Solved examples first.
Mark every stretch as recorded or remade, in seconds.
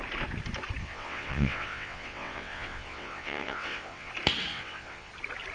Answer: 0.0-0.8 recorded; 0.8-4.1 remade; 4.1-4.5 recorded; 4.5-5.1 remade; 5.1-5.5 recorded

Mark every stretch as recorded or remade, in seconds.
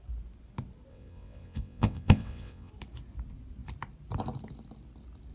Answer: 0.0-0.9 recorded; 0.9-2.7 remade; 2.7-5.3 recorded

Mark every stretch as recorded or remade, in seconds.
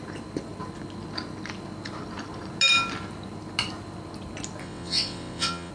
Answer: 0.0-4.6 recorded; 4.6-5.7 remade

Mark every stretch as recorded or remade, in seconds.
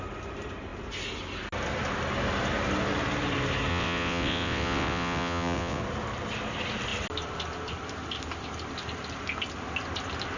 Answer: 0.0-3.7 recorded; 3.7-5.8 remade; 5.8-10.4 recorded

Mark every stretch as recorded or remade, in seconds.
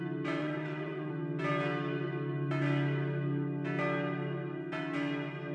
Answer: 0.0-0.4 recorded; 0.4-1.1 remade; 1.1-5.5 recorded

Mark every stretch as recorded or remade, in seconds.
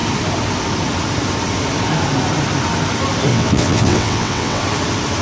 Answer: 0.0-3.3 recorded; 3.3-4.6 remade; 4.6-5.2 recorded